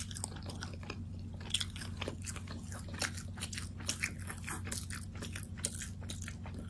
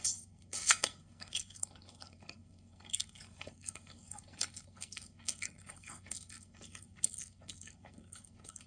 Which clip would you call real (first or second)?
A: first